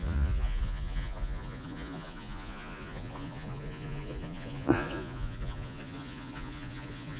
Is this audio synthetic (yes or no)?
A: yes